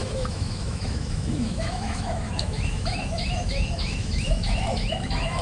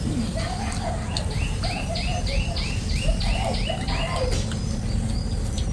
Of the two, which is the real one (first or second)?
second